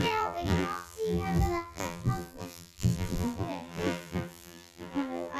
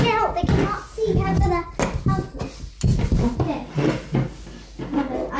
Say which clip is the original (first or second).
second